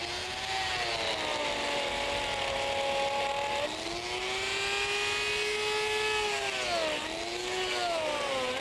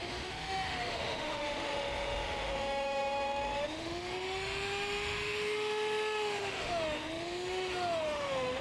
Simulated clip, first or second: second